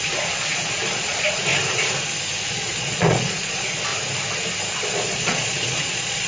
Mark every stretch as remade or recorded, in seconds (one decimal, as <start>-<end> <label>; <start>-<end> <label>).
0.0-1.5 remade; 1.5-2.5 recorded; 2.5-3.9 remade; 3.9-4.9 recorded; 4.9-6.3 remade